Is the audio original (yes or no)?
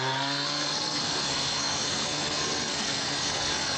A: no